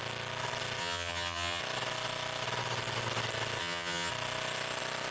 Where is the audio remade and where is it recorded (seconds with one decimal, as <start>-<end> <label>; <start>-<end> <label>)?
0.0-0.8 recorded; 0.8-1.6 remade; 1.6-3.6 recorded; 3.6-4.1 remade; 4.1-5.1 recorded